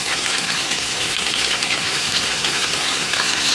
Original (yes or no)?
no